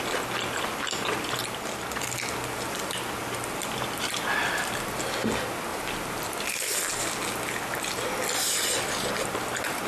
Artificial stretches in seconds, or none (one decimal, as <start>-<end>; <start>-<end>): 5.7-6.3

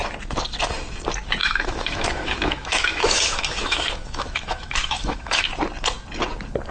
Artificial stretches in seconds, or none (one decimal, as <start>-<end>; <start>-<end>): 1.4-5.4

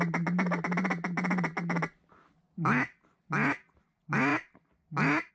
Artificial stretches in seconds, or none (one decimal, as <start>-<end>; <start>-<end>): none

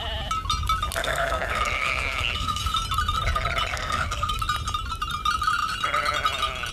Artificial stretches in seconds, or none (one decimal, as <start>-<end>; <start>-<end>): 1.0-2.6; 3.7-4.4

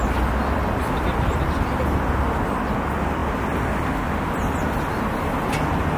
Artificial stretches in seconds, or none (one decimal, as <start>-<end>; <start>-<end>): none

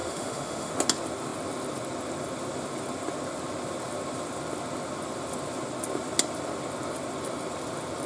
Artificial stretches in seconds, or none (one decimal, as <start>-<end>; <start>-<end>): 0.0-0.7

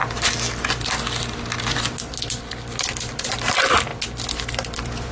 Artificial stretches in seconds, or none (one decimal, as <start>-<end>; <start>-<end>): 3.1-3.9; 4.4-5.1